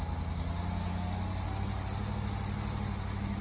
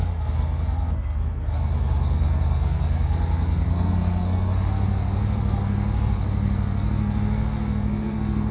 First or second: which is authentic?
first